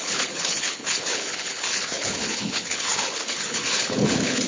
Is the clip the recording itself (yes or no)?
no